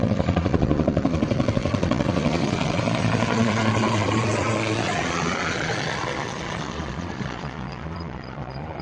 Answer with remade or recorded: remade